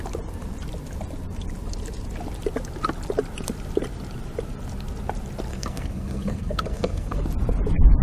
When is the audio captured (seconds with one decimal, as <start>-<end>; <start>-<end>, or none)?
0.0-5.5; 7.2-8.0